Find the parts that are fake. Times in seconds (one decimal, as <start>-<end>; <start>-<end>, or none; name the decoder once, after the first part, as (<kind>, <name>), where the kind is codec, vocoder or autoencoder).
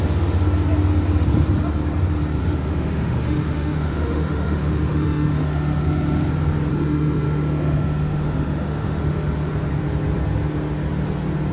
2.4-6.3 (autoencoder, DAC-VAE); 6.7-9.0